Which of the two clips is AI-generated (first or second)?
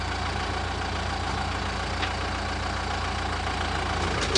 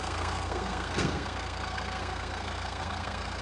second